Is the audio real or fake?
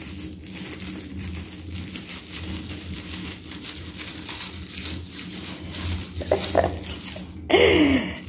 real